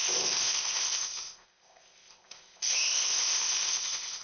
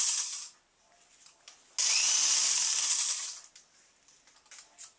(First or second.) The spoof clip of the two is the first